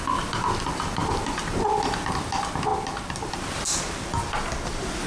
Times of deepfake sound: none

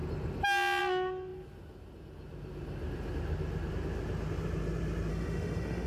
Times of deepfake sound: 5.1-5.9 (autoencoder, DAC-VAE)

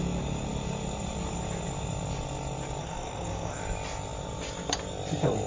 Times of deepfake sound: 2.8-3.6 (codec, SNAC)

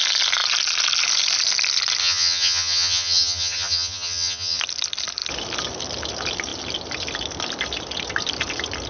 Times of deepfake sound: 2.0-4.6 (vocoder, HiFi-GAN)

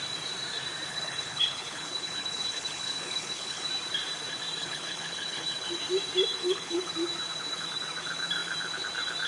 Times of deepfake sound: 0.9-3.6 (codec, HILCodec); 4.6-5.7; 6.3-6.9

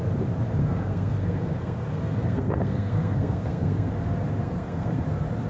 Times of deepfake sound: 0.6-3.9 (codec, SNAC); 4.4-5.0

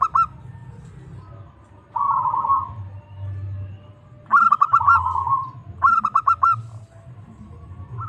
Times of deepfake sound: none